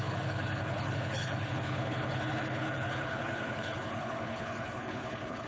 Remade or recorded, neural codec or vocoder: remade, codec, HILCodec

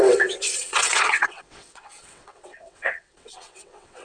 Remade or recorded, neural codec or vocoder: remade, vocoder, WaveNeXt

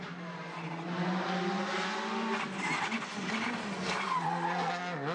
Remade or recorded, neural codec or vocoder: recorded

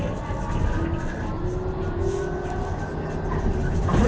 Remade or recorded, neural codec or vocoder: recorded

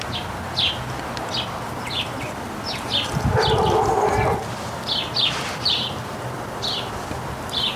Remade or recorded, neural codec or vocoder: recorded